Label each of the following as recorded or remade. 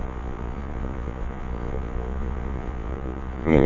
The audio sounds remade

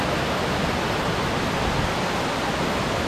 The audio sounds recorded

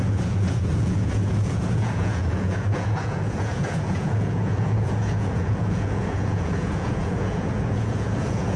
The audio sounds remade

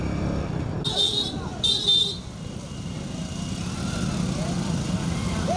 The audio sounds recorded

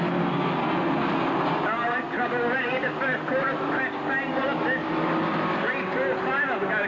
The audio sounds recorded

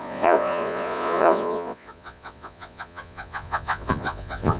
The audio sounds remade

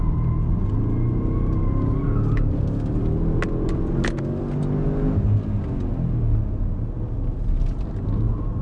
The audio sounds recorded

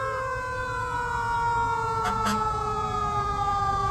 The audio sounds remade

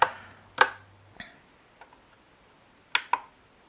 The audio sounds recorded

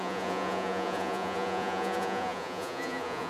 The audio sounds remade